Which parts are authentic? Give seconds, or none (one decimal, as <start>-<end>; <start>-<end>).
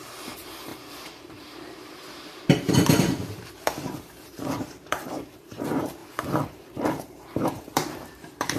6.0-6.6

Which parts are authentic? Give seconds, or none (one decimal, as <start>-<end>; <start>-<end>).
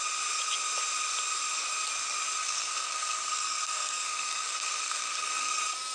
0.0-2.4; 5.5-5.9